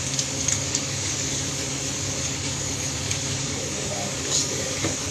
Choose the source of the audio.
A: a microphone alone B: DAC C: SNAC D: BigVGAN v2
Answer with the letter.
B